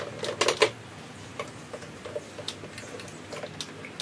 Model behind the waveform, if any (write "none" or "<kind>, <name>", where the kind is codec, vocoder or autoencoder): none